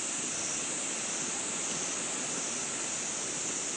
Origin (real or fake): real